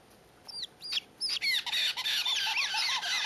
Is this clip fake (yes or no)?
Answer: no